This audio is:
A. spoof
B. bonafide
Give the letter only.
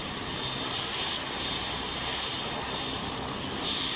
B